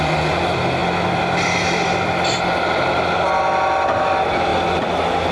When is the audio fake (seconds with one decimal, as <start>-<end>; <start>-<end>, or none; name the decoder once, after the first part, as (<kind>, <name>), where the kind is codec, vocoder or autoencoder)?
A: none